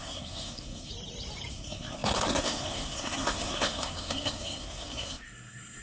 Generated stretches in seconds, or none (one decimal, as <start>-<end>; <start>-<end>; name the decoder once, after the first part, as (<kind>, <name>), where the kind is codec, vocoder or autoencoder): 0.0-0.9 (codec, SNAC); 1.5-5.8